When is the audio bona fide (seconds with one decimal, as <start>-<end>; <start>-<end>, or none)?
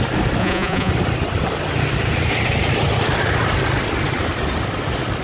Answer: 0.0-0.4; 0.9-5.2